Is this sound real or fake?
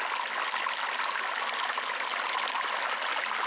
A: real